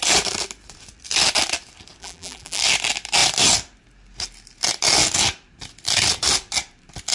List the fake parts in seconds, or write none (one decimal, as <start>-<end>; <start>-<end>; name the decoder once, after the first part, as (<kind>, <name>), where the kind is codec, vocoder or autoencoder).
2.0-2.6 (vocoder, BigVGAN v2)